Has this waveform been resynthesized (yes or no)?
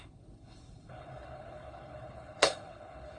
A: yes